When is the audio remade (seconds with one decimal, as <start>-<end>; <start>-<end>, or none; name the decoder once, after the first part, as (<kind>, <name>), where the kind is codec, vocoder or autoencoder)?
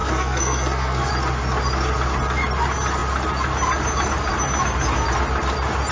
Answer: 0.0-1.1 (codec, SNAC)